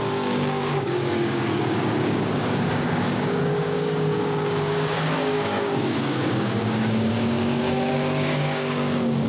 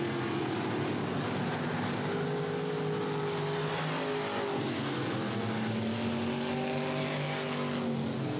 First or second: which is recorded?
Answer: second